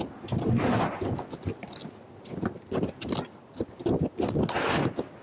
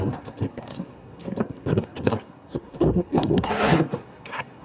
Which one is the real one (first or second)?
first